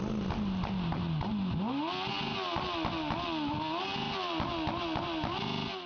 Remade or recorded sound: recorded